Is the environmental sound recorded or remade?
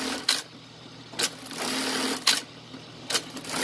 recorded